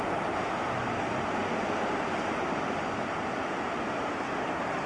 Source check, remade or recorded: recorded